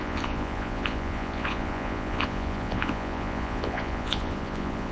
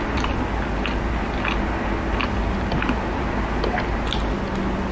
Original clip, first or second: second